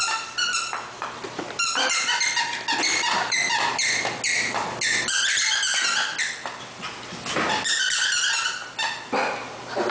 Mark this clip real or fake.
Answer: real